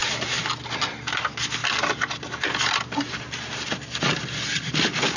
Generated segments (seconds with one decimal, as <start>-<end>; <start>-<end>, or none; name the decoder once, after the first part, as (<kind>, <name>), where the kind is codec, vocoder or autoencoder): none